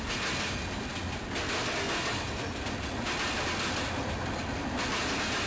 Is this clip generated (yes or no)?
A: no